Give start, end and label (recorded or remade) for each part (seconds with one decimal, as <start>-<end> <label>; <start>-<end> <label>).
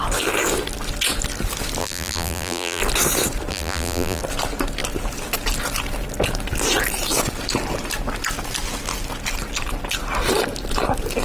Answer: 0.0-1.8 recorded; 1.8-2.8 remade; 2.8-3.5 recorded; 3.5-4.2 remade; 4.2-11.2 recorded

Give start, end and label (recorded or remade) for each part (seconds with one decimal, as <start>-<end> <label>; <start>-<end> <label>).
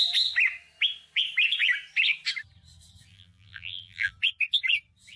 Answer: 0.0-3.1 recorded; 3.1-4.1 remade; 4.1-5.2 recorded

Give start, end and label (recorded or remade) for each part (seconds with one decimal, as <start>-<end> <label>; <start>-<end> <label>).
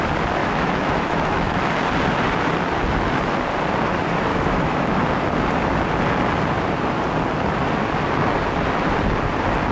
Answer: 0.0-0.4 recorded; 0.4-1.6 remade; 1.6-4.3 recorded; 4.3-5.0 remade; 5.0-9.7 recorded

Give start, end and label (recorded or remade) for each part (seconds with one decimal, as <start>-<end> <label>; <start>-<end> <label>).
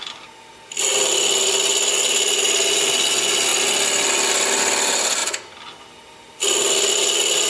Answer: 0.0-7.5 recorded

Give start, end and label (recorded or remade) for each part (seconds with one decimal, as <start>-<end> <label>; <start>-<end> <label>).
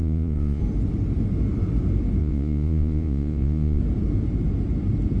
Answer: 0.0-0.6 remade; 0.6-2.2 recorded; 2.2-3.8 remade; 3.8-5.2 recorded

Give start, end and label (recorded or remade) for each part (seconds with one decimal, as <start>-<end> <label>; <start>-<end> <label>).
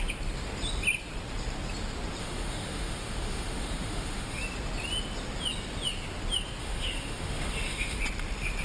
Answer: 0.0-2.2 recorded; 2.2-4.4 remade; 4.4-6.6 recorded; 6.6-8.0 remade; 8.0-8.6 recorded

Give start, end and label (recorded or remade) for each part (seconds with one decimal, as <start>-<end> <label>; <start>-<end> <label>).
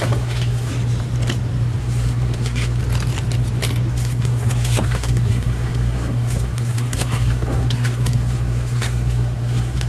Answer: 0.0-0.7 remade; 0.7-1.8 recorded; 1.8-2.8 remade; 2.8-3.9 recorded; 3.9-9.9 remade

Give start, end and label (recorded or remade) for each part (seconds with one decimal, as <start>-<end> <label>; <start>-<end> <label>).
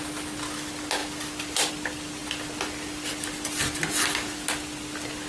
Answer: 0.0-5.3 recorded